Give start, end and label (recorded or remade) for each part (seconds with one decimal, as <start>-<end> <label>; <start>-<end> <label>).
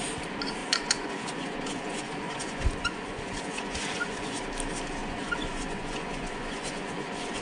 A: 0.0-0.6 recorded; 0.6-4.4 remade; 4.4-5.0 recorded; 5.0-7.4 remade